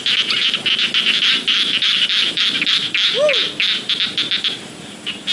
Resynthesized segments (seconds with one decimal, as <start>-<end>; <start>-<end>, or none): 0.0-0.4; 1.0-3.0; 4.4-5.3